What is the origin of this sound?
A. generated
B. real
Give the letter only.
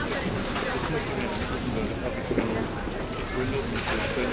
B